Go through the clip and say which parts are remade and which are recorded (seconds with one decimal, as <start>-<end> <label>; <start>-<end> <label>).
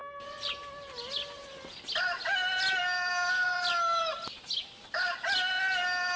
0.0-6.2 recorded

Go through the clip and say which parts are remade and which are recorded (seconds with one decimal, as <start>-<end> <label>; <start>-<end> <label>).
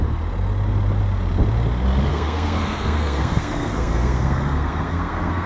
0.0-2.1 recorded; 2.1-5.5 remade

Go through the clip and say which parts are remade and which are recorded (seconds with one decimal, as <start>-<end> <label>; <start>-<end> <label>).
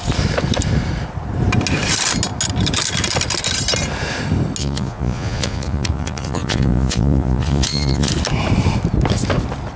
0.0-4.6 recorded; 4.6-8.1 remade; 8.1-9.8 recorded